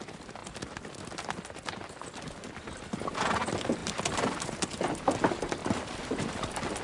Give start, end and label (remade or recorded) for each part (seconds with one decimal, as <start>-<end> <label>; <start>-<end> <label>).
0.0-3.8 recorded; 3.8-5.0 remade; 5.0-5.6 recorded; 5.6-6.8 remade